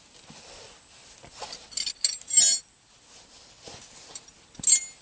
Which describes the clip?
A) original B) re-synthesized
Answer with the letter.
A